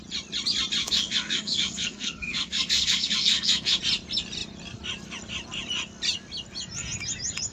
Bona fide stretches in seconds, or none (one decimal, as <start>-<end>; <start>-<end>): 0.0-0.8; 3.8-7.5